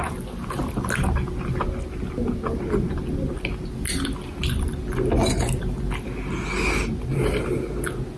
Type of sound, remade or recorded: recorded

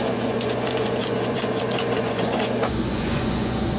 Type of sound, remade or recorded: remade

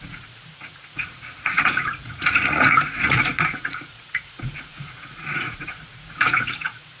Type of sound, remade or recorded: remade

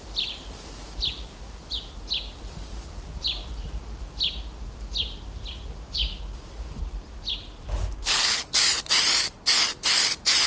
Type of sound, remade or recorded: recorded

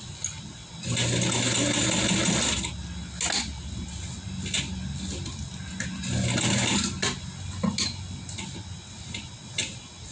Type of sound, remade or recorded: recorded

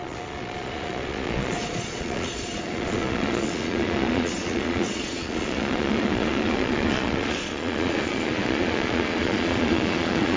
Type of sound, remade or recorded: remade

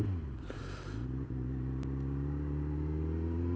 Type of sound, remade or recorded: recorded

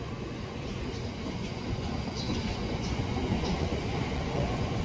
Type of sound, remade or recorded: remade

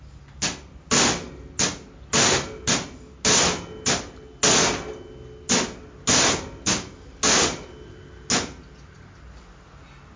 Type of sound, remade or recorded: recorded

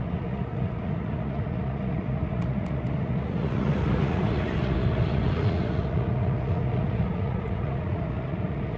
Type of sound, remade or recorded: remade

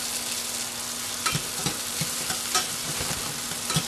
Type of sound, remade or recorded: recorded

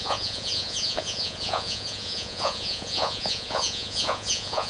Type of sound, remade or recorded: remade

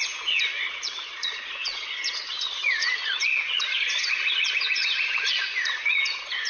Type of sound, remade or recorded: remade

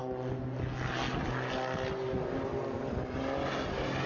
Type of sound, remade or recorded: recorded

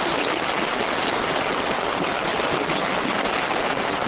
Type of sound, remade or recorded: recorded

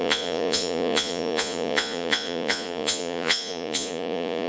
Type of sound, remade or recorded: remade